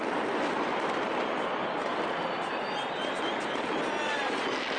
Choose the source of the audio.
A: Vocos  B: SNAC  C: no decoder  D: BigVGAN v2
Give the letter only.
C